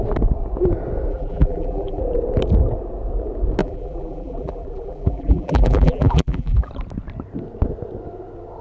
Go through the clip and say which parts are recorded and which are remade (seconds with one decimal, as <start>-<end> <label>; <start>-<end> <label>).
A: 0.0-1.1 recorded; 1.1-2.0 remade; 2.0-3.6 recorded; 3.6-6.7 remade; 6.7-8.6 recorded